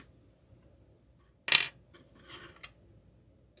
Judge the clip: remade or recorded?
recorded